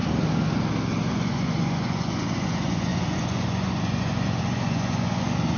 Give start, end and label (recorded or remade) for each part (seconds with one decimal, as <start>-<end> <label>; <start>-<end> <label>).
0.0-1.1 recorded; 1.1-5.6 remade